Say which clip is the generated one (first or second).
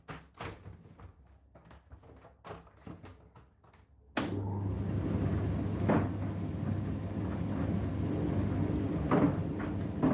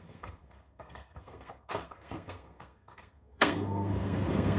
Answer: second